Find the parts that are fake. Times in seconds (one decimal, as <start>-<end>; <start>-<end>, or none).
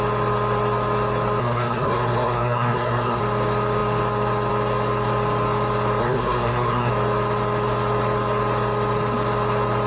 1.4-3.2; 6.0-6.9